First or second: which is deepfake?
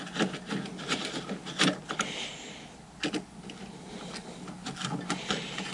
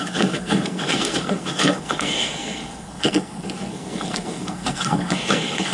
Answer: second